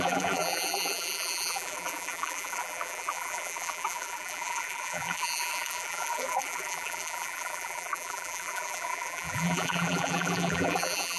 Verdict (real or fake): fake